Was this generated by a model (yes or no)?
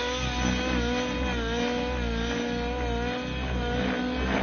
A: no